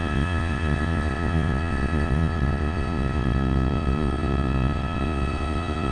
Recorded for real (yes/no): no